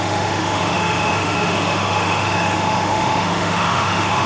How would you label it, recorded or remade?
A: remade